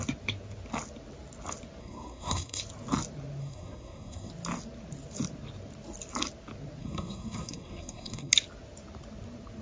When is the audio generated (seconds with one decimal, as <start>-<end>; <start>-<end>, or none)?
1.8-2.6; 3.4-4.3; 6.8-8.3